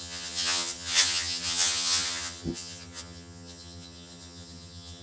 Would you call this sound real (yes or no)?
no